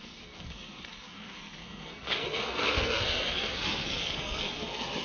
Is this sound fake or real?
fake